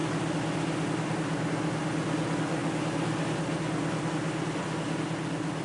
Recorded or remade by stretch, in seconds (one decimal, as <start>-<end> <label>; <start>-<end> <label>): 0.0-5.6 recorded